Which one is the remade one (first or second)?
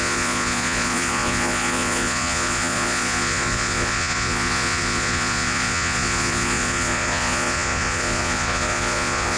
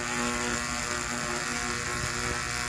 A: first